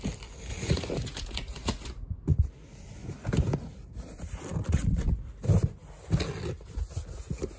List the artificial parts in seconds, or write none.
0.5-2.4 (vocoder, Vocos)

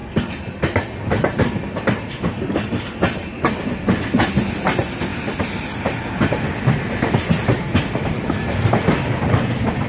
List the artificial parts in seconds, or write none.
none

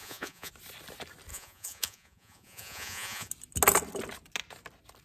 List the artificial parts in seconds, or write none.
0.0-0.5 (vocoder, Vocos); 1.3-3.3

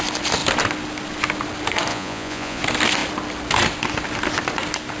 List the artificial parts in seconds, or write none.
1.9-2.6 (vocoder, Vocos)

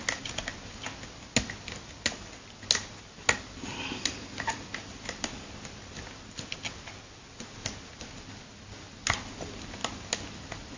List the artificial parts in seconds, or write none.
none

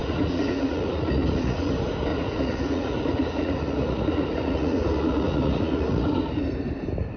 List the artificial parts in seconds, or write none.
0.0-1.7 (vocoder, Vocos); 2.1-6.4

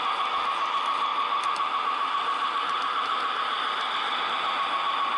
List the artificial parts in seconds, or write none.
none